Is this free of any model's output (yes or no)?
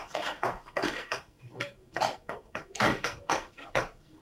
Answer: no